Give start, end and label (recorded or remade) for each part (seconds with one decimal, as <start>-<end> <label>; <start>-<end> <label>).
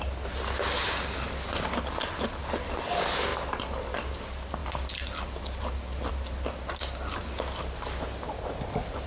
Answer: 0.0-9.1 recorded